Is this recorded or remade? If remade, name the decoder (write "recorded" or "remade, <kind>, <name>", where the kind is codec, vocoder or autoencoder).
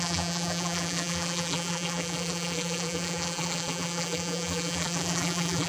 remade, vocoder, BigVGAN v2